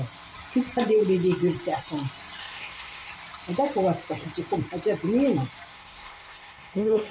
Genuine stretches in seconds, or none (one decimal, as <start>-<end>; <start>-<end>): 0.0-2.4; 3.1-5.7

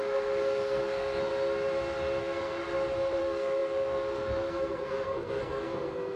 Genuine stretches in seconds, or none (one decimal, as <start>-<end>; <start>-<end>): 1.3-2.2; 2.6-3.2